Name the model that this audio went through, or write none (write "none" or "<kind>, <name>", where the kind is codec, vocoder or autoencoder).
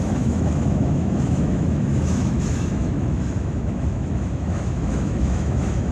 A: autoencoder, DAC-VAE